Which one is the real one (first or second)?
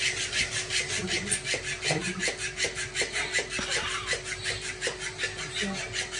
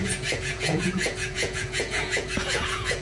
first